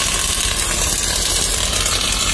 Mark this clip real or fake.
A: real